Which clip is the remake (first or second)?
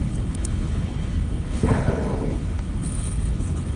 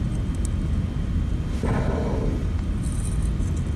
first